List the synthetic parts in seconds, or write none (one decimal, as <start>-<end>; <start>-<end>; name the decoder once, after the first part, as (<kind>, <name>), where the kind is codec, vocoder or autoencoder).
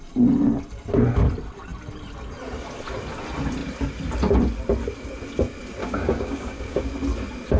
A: 5.8-6.9 (codec, DAC)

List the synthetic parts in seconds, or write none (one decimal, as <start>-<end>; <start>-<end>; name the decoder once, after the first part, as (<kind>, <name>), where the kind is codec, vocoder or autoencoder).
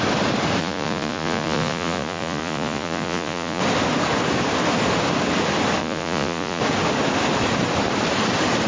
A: 0.6-3.6 (vocoder, Vocos); 5.8-6.6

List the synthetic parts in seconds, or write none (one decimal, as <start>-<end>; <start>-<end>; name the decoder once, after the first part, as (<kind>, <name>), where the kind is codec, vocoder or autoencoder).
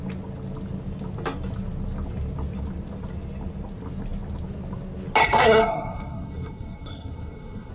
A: 5.2-7.7 (codec, SNAC)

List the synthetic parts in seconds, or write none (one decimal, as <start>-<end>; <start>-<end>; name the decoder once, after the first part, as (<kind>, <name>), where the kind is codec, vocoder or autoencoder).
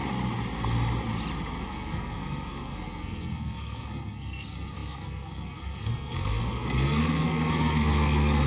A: 1.5-8.5 (codec, SNAC)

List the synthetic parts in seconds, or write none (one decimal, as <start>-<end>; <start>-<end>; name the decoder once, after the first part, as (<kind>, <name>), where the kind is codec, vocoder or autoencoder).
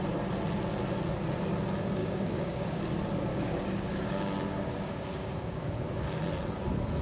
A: 2.0-2.8 (codec, DAC); 3.3-6.2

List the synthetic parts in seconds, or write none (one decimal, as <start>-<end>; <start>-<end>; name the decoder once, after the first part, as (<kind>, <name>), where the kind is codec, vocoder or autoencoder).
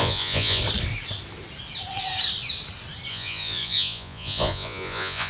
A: 0.0-0.6 (vocoder, Vocos); 3.1-5.3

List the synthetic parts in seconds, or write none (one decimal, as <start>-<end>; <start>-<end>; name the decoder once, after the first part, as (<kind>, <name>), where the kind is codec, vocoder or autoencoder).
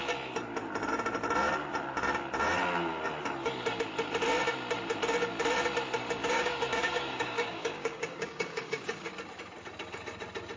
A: 6.0-9.1 (codec, DAC)